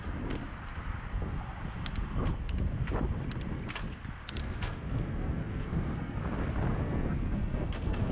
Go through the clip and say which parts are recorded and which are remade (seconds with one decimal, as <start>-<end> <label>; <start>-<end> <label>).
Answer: 0.0-4.4 recorded; 4.4-6.2 remade; 6.2-6.7 recorded; 6.7-8.1 remade